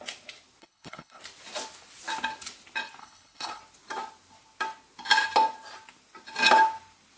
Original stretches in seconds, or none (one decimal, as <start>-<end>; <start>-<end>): 0.0-0.6; 1.2-3.0; 3.6-7.2